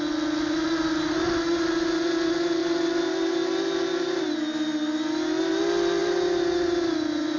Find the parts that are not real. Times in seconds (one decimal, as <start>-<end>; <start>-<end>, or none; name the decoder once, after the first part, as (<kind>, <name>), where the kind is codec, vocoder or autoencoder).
6.0-7.4 (vocoder, BigVGAN v2)